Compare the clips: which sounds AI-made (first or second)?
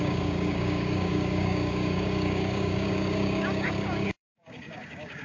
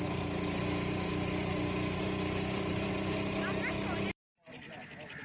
first